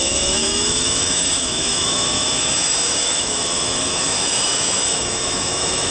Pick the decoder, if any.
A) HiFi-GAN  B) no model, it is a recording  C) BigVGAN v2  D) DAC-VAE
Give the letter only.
D